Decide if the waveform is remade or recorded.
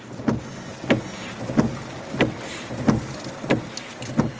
recorded